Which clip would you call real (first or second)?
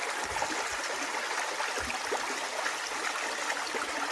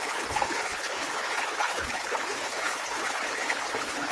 first